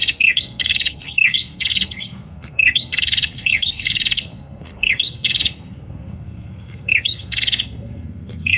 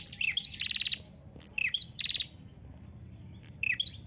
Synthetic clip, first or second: first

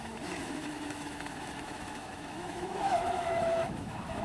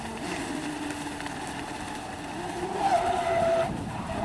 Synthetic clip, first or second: first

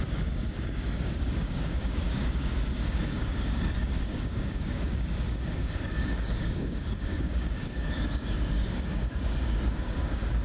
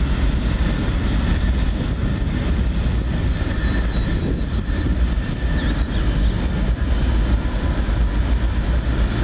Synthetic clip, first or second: first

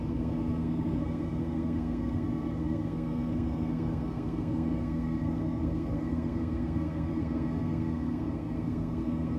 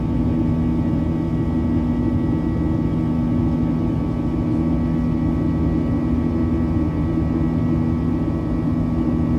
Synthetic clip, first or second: first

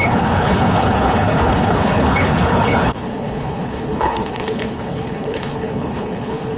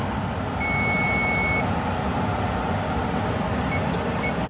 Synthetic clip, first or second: first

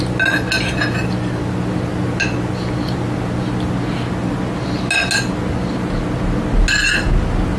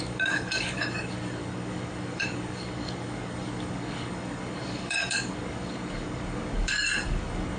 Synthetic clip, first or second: second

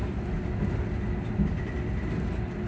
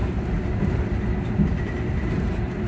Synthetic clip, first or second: second